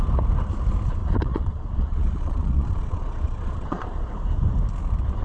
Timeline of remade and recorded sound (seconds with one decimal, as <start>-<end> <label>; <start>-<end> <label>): 0.0-1.0 recorded; 1.0-4.1 remade; 4.1-5.2 recorded